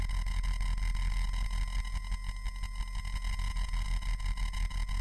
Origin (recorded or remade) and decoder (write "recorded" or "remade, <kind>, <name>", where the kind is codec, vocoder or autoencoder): recorded